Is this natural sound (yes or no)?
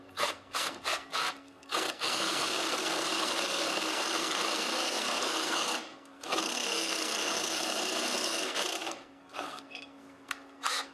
no